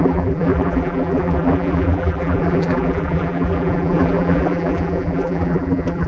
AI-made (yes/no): yes